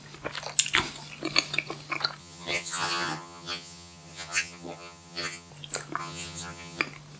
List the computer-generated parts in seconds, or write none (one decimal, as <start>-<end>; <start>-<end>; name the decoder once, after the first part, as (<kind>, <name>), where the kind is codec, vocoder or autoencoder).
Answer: 2.2-5.5 (vocoder, HiFi-GAN); 6.0-6.8